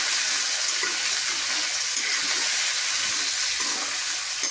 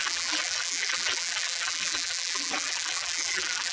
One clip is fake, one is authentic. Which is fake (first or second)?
second